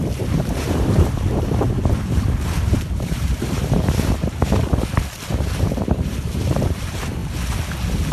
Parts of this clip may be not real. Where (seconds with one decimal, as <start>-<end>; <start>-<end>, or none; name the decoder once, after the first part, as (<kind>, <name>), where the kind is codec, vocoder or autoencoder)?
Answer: 0.0-4.6 (vocoder, BigVGAN v2); 5.3-7.2